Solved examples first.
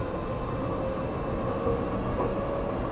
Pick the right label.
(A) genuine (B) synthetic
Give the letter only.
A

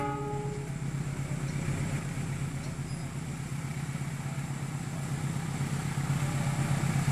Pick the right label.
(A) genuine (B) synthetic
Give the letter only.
A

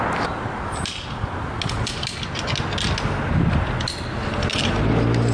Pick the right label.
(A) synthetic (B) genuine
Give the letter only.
B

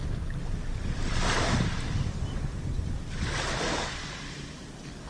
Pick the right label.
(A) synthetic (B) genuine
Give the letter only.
A